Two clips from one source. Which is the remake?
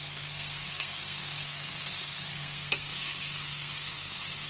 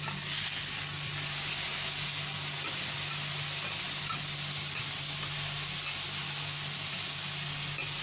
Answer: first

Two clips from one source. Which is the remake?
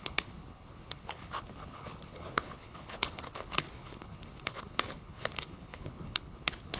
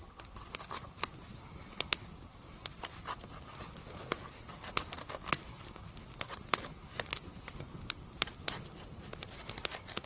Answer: first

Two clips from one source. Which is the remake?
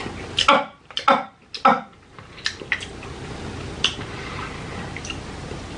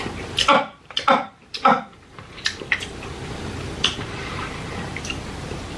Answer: second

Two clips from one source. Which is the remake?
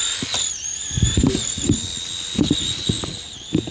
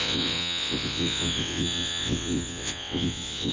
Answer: second